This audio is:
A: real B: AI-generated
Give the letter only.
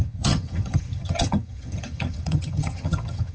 B